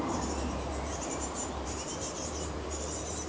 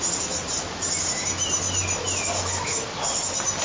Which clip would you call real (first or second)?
second